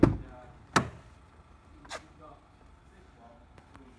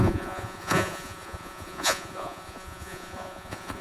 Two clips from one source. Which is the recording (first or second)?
first